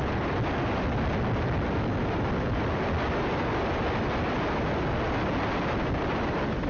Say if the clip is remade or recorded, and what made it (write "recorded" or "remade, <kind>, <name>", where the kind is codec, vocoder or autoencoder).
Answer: recorded